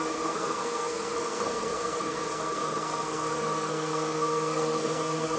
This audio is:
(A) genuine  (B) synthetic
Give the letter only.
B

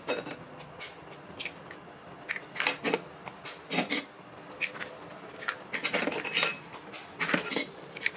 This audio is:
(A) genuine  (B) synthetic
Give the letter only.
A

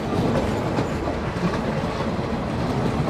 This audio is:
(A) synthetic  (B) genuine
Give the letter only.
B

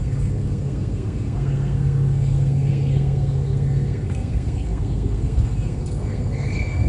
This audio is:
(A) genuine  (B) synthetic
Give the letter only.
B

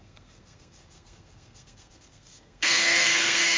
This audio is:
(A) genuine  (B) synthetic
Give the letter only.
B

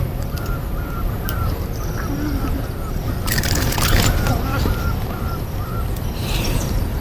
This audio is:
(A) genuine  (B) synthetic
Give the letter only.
A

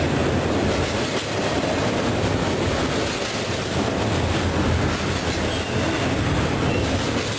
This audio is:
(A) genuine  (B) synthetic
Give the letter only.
A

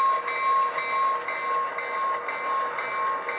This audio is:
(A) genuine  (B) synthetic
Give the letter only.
A